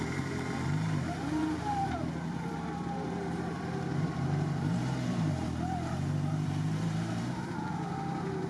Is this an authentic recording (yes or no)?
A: no